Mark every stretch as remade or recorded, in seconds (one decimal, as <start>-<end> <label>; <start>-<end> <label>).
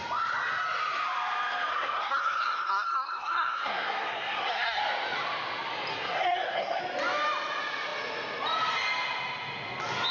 0.0-1.7 recorded; 1.7-4.8 remade; 4.8-5.9 recorded; 5.9-6.8 remade; 6.8-10.1 recorded